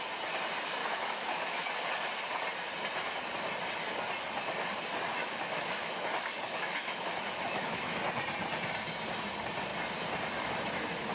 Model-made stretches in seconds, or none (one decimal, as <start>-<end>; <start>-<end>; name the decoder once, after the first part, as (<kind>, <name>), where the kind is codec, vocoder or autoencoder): 0.8-1.7 (autoencoder, DAC-VAE); 5.2-8.0

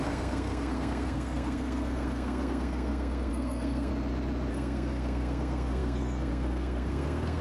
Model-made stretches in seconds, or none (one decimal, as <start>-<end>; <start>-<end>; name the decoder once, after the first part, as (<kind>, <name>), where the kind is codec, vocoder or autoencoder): 0.0-3.9 (codec, SNAC); 4.5-7.4